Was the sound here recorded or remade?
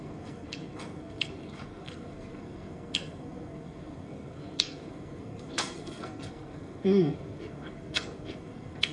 remade